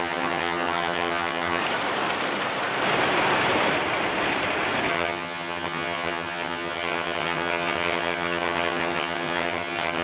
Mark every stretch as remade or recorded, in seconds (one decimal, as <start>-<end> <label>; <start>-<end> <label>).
0.0-1.6 remade; 1.6-4.9 recorded; 4.9-10.0 remade